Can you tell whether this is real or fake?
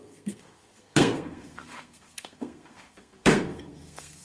fake